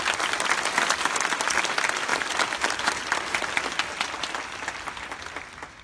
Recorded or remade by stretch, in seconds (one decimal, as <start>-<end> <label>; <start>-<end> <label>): 0.0-5.8 recorded